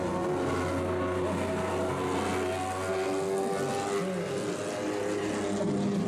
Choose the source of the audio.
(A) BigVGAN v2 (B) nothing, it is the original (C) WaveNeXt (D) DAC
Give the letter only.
B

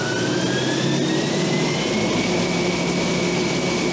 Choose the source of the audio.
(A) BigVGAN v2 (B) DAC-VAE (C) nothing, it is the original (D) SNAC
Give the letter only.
C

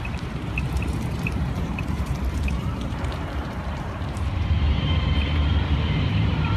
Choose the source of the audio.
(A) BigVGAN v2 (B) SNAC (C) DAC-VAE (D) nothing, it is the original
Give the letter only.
A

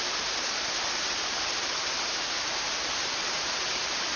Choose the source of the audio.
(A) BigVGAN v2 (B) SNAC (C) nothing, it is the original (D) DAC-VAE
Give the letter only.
A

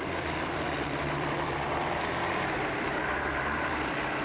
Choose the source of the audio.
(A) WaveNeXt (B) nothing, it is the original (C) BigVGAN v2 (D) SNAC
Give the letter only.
C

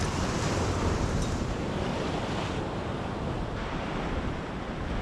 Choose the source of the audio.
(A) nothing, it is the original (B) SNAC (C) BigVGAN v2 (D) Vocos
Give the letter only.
C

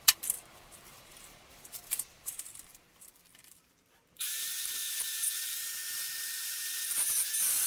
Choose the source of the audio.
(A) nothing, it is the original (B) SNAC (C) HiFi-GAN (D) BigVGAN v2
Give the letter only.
D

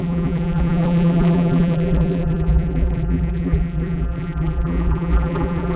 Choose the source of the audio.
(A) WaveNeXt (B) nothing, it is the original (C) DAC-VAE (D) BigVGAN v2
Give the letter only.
D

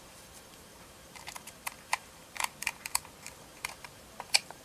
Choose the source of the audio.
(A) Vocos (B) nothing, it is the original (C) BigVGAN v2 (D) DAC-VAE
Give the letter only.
C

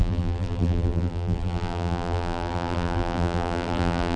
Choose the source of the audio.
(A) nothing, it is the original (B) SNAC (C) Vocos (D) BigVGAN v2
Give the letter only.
D